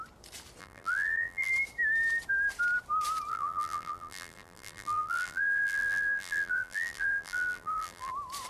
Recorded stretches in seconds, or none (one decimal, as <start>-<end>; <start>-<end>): 0.0-0.6; 1.5-3.3; 8.1-8.5